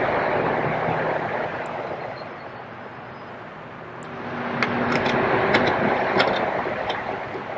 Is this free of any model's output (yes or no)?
yes